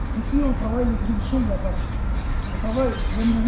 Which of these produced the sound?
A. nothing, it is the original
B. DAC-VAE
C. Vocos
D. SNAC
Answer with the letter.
A